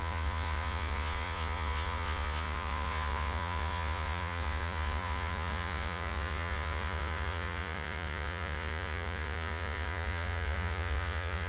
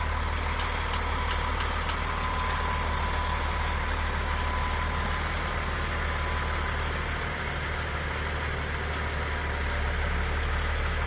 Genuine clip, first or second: second